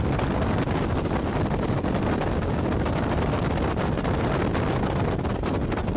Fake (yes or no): no